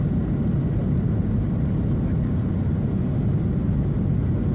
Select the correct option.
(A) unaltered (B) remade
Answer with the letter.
A